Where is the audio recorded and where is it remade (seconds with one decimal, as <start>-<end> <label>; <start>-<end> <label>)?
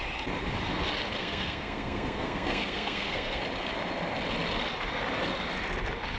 0.0-1.2 recorded; 1.2-3.4 remade; 3.4-6.2 recorded